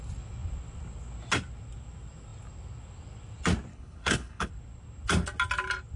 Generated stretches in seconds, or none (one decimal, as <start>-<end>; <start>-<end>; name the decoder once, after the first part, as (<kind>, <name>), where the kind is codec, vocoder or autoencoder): 3.7-4.5 (codec, HILCodec)